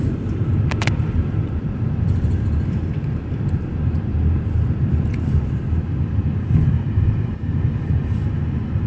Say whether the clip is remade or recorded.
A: remade